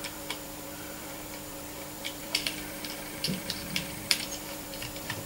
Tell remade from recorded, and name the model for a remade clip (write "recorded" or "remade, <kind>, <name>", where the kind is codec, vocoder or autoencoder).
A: remade, vocoder, BigVGAN v2